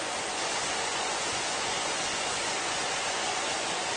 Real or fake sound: fake